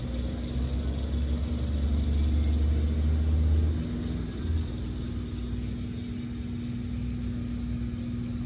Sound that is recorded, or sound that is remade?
recorded